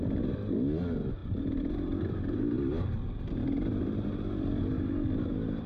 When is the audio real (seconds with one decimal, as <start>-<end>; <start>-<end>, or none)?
0.0-5.7